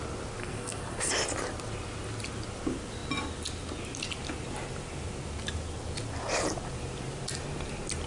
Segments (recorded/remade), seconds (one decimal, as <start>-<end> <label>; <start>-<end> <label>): 0.0-0.4 recorded; 0.4-1.1 remade; 1.1-8.1 recorded